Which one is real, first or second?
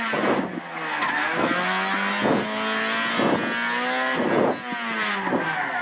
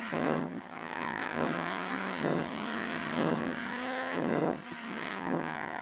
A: first